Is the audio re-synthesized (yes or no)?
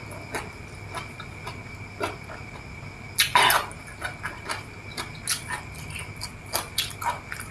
no